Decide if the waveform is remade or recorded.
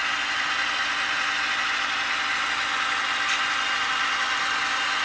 recorded